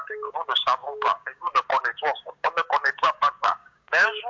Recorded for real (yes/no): no